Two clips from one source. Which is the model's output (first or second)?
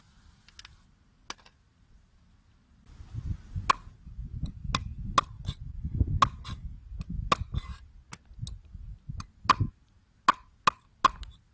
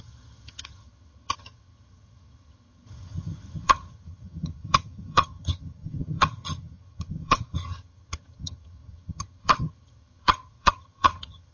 second